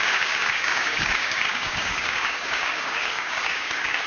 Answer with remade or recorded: remade